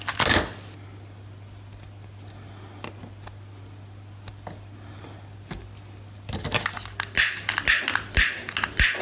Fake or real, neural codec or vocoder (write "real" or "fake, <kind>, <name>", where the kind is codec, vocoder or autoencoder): real